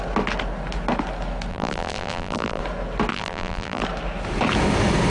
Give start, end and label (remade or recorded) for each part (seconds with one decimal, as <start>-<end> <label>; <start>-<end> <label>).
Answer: 0.0-1.5 recorded; 1.5-2.6 remade; 2.6-3.1 recorded; 3.1-3.8 remade; 3.8-5.1 recorded